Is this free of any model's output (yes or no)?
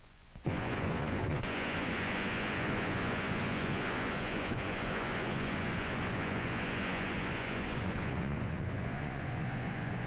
no